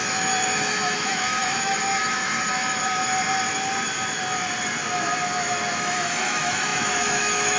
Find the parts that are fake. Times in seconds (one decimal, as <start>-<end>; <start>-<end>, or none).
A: 0.0-3.0; 5.8-7.6